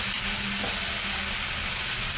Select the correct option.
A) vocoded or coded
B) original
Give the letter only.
B